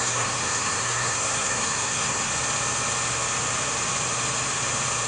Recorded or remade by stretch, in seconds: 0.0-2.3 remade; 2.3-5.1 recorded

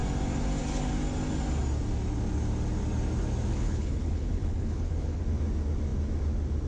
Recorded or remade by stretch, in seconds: 0.0-3.5 recorded; 3.5-5.2 remade; 5.2-6.7 recorded

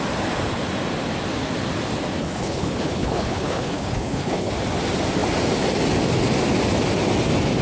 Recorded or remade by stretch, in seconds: 0.0-2.2 recorded; 2.2-4.5 remade; 4.5-7.6 recorded

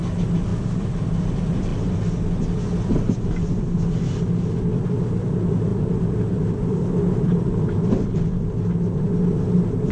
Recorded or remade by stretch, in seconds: 0.0-0.5 recorded; 0.5-1.1 remade; 1.1-5.7 recorded; 5.7-8.5 remade; 8.5-9.9 recorded